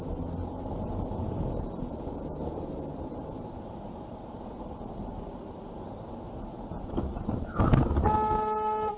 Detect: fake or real real